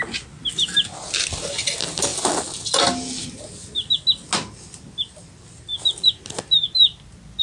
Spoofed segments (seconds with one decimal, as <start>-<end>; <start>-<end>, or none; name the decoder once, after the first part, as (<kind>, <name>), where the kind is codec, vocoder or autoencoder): none